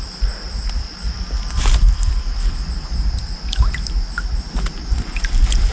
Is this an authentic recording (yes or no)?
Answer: yes